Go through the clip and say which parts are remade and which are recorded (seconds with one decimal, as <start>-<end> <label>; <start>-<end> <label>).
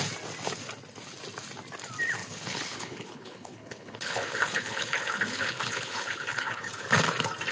0.0-2.2 recorded; 2.2-6.7 remade; 6.7-7.5 recorded